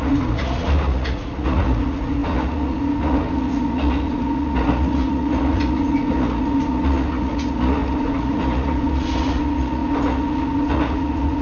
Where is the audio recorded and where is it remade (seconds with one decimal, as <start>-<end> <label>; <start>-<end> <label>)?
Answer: 0.0-11.4 remade